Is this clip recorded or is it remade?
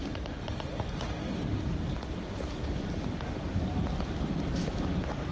recorded